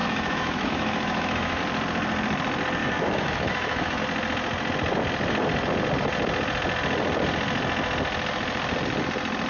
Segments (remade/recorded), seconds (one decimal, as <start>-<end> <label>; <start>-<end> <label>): 0.0-1.6 remade; 1.6-2.8 recorded; 2.8-4.0 remade; 4.0-9.5 recorded